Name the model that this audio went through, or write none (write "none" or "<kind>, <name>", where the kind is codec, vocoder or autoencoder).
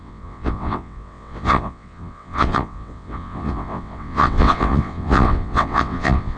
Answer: vocoder, WaveNeXt